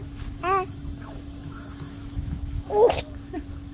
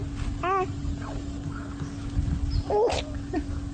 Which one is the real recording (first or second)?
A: second